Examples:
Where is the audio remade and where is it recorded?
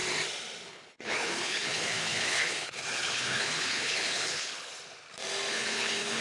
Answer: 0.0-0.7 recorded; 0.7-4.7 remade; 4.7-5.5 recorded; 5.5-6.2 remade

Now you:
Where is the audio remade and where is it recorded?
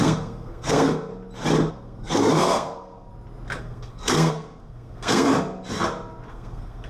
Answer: 0.0-1.1 remade; 1.1-1.7 recorded; 1.7-3.1 remade; 3.1-3.6 recorded; 3.6-5.3 remade; 5.3-6.3 recorded; 6.3-6.9 remade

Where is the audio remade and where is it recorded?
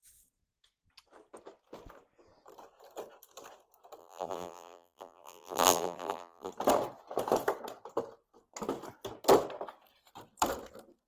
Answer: 0.0-4.0 recorded; 4.0-6.5 remade; 6.5-11.1 recorded